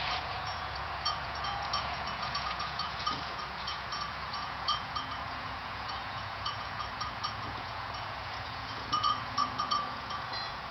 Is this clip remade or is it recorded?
remade